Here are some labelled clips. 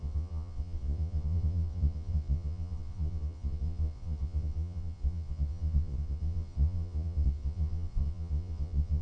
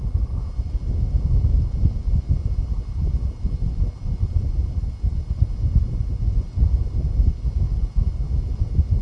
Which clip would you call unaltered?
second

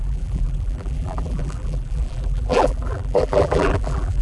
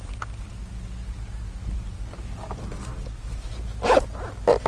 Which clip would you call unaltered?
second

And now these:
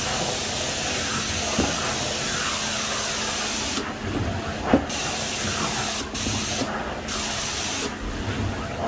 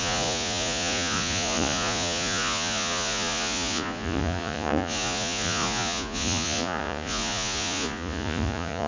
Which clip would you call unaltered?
first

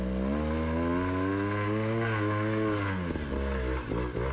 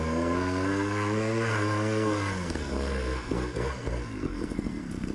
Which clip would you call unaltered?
first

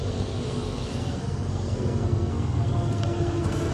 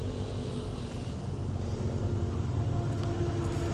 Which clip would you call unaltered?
second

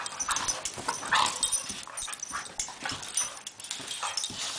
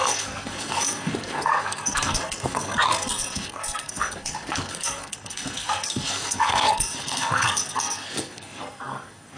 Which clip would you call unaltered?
first